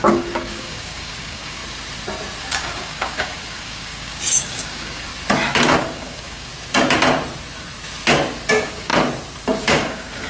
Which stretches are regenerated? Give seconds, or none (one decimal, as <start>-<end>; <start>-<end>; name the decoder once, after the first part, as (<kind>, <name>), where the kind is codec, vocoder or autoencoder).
0.0-1.6 (codec, DAC); 2.4-5.1; 5.8-6.5; 8.5-8.9; 9.6-10.3